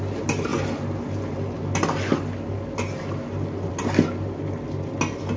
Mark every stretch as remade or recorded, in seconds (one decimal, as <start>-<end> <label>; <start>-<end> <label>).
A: 0.0-5.4 recorded